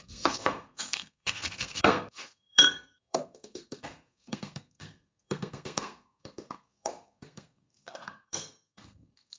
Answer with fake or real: fake